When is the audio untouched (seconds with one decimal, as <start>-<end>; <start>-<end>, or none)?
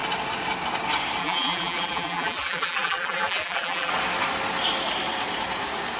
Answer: 0.0-1.2; 3.9-6.0